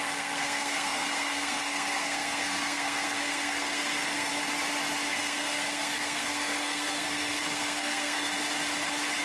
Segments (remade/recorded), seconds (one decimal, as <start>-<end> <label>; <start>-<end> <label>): 0.0-4.3 remade; 4.3-5.1 recorded; 5.1-8.3 remade; 8.3-9.2 recorded